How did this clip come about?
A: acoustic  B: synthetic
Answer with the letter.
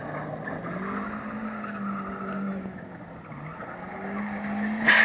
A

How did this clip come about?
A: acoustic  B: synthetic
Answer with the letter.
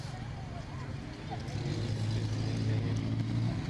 A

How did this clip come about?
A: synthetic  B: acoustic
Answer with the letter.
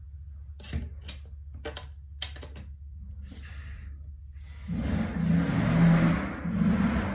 B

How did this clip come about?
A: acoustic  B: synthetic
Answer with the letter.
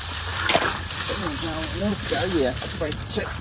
B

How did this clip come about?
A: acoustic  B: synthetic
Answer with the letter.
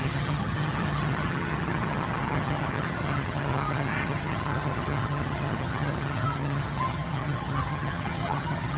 B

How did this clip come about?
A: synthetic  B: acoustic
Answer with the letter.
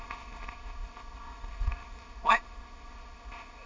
A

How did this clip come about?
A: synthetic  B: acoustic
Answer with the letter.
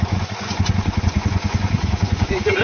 A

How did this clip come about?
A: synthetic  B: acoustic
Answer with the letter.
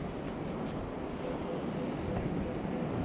B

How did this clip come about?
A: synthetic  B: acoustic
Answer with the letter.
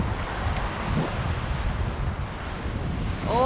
B